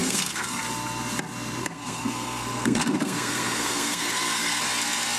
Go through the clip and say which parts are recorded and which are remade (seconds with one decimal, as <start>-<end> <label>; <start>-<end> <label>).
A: 0.0-0.6 remade; 0.6-1.6 recorded; 1.6-4.6 remade; 4.6-5.2 recorded